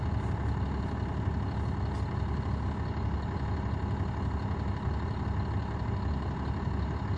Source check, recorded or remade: recorded